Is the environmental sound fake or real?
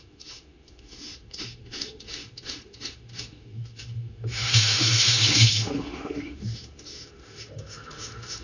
fake